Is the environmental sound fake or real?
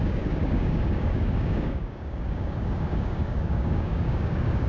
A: fake